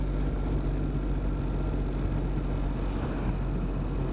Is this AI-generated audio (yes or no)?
no